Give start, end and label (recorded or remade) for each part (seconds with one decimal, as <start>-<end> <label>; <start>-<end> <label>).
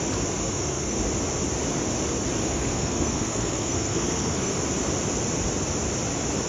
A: 0.0-0.4 recorded; 0.4-1.0 remade; 1.0-2.4 recorded; 2.4-4.6 remade; 4.6-6.5 recorded